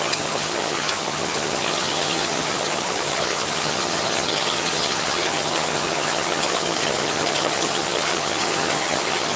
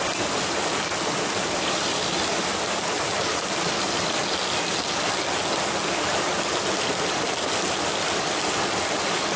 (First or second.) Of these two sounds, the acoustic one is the second